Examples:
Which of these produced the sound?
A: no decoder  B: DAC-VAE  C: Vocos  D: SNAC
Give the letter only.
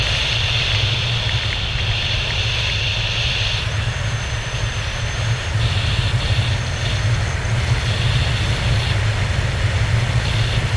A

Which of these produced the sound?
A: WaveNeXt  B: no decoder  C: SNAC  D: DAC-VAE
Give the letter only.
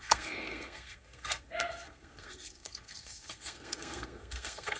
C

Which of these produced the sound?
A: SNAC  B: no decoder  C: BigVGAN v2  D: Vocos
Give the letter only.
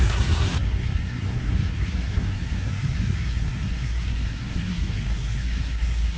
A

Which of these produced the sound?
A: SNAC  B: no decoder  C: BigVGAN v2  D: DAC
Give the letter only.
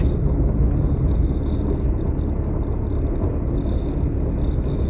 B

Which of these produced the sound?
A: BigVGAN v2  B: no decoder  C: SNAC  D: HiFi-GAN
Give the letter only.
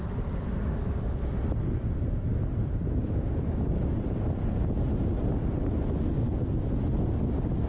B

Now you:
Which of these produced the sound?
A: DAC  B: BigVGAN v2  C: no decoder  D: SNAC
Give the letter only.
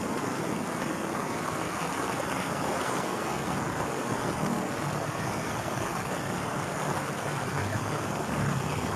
D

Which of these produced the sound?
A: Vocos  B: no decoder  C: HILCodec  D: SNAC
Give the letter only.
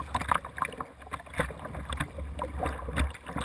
B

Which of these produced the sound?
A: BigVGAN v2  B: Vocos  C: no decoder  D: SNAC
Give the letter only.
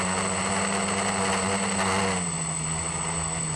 C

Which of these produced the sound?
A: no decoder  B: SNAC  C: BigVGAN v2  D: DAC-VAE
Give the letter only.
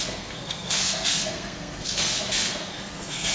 B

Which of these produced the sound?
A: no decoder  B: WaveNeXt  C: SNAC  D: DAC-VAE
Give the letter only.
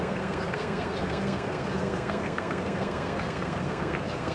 C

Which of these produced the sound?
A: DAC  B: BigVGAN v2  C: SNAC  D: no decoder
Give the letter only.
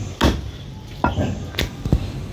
D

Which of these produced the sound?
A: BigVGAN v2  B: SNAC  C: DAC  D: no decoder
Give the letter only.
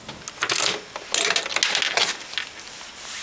D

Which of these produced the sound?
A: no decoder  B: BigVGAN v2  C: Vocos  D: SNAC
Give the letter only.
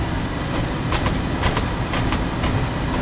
A